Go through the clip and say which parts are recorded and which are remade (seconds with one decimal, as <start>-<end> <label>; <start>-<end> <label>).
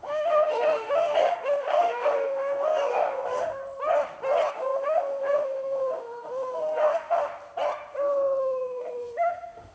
0.0-3.6 remade; 3.6-4.5 recorded; 4.5-7.3 remade; 7.3-8.4 recorded; 8.4-9.7 remade